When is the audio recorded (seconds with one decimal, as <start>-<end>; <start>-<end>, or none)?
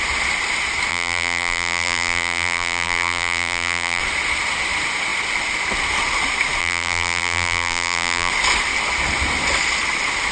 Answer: 0.0-0.9; 4.0-6.6; 8.3-10.3